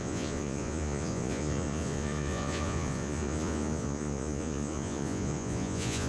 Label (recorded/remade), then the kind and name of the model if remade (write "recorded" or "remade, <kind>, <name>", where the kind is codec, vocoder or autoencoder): remade, vocoder, Vocos